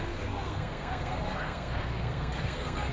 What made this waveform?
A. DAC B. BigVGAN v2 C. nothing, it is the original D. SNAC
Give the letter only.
D